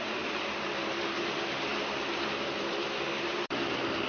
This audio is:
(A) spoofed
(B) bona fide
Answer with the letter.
B